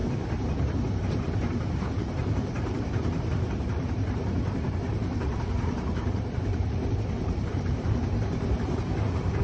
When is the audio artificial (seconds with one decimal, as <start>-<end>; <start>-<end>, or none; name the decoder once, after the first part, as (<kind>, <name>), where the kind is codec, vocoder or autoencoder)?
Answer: 0.7-9.4 (vocoder, BigVGAN v2)